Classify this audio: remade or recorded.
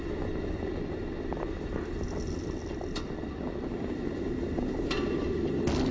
recorded